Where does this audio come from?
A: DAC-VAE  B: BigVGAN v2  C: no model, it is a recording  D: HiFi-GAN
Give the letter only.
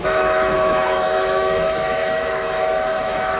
A